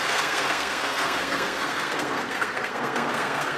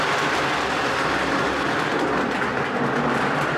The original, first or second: second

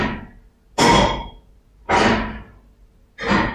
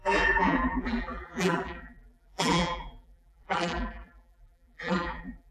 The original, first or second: first